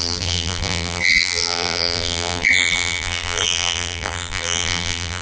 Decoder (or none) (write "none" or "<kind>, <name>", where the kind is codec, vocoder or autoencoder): vocoder, BigVGAN v2